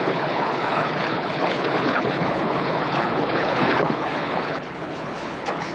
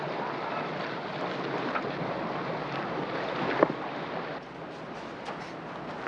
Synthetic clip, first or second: first